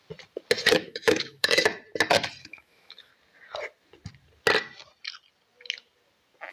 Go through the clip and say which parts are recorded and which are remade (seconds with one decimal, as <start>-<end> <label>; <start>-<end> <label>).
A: 0.0-0.7 recorded; 0.7-1.6 remade; 1.6-2.4 recorded; 2.4-3.1 remade; 3.1-6.5 recorded